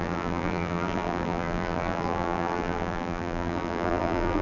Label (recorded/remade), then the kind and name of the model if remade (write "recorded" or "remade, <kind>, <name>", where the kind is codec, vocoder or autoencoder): remade, vocoder, BigVGAN v2